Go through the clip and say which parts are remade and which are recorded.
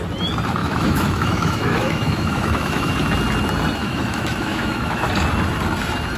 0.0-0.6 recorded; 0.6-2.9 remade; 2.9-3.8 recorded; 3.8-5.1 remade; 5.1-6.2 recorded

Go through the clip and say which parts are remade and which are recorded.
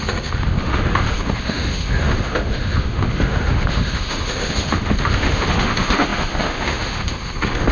0.0-7.7 remade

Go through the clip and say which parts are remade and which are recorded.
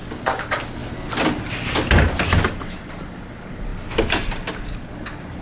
0.0-5.4 recorded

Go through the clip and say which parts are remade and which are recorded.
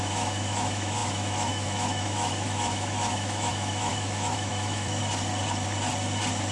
0.0-5.0 remade; 5.0-6.5 recorded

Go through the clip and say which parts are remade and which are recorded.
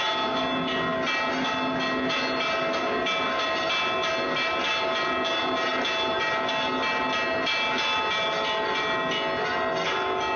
0.0-10.4 recorded